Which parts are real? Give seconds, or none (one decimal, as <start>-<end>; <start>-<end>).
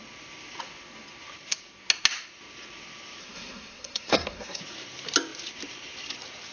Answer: 0.0-3.2; 4.6-6.5